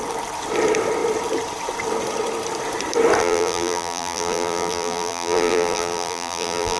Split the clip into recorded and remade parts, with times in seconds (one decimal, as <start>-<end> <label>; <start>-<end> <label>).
0.0-3.2 recorded; 3.2-6.8 remade